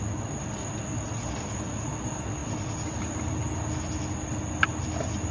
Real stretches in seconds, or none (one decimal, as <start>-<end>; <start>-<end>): 0.0-5.3